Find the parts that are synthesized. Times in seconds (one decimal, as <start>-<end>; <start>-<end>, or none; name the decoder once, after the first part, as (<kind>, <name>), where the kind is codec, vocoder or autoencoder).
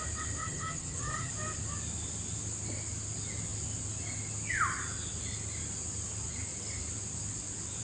0.4-1.3 (vocoder, HiFi-GAN)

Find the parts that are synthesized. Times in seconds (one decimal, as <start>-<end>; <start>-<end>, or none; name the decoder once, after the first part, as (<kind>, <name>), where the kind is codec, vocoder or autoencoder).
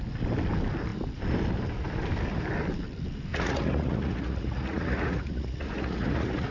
3.3-6.5 (vocoder, Vocos)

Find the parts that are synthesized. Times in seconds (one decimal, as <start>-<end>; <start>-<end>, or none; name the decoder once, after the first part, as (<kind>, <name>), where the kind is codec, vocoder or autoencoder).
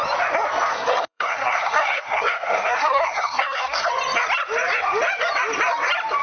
0.7-3.9 (codec, SNAC)